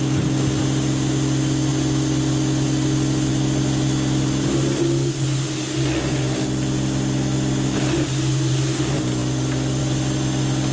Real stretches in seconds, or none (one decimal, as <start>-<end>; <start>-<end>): 0.0-10.7